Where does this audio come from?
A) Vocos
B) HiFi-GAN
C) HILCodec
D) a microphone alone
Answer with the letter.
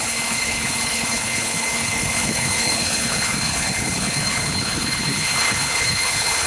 C